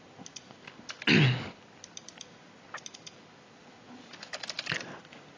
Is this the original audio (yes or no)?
yes